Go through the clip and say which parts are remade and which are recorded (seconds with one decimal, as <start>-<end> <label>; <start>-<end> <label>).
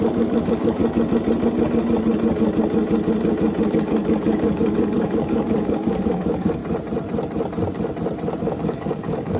0.0-0.8 remade; 0.8-3.7 recorded; 3.7-6.6 remade; 6.6-8.4 recorded; 8.4-9.4 remade